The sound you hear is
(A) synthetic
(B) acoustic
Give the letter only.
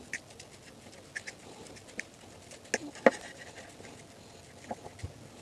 B